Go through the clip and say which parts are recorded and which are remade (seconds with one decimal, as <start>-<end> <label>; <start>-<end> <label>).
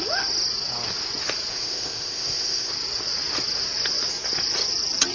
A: 0.0-1.5 recorded; 1.5-2.7 remade; 2.7-5.1 recorded